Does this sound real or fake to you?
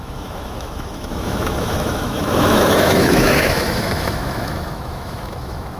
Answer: fake